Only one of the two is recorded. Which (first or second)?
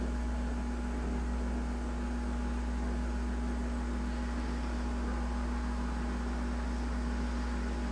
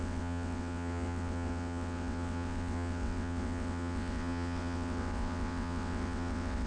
first